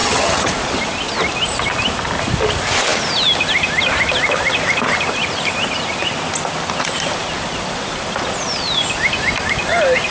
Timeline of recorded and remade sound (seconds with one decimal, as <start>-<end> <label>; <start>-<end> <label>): 0.0-0.5 remade; 0.5-10.1 recorded